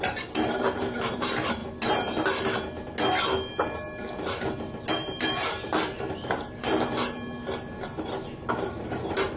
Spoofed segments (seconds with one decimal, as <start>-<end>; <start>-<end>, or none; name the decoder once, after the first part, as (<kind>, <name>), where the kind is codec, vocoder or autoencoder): 0.0-1.6 (vocoder, BigVGAN v2); 4.9-6.9; 8.5-9.4